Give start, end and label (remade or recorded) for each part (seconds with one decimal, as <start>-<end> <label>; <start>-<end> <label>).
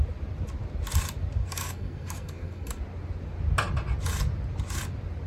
0.0-1.4 recorded; 1.4-2.8 remade; 2.8-5.3 recorded